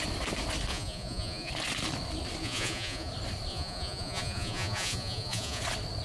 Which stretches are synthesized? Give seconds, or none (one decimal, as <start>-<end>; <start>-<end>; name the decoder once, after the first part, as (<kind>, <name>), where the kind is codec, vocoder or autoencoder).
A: 0.7-1.5 (vocoder, Vocos); 2.4-3.1; 3.5-5.6